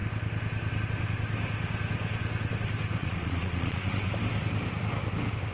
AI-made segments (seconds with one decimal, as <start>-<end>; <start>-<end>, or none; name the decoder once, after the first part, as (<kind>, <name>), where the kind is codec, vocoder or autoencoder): 3.0-4.1 (vocoder, Vocos)